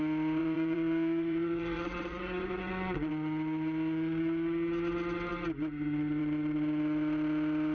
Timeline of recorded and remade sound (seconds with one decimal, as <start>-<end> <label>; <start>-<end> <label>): 0.0-0.4 recorded; 0.4-3.1 remade; 3.1-7.7 recorded